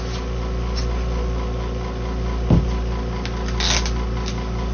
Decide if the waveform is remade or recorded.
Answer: recorded